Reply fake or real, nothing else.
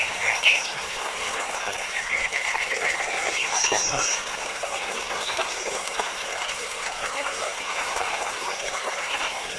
fake